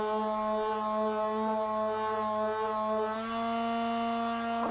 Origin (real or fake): real